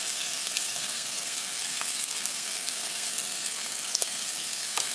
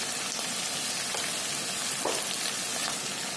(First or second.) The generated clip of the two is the first